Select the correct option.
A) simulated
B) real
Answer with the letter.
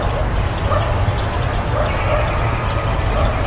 B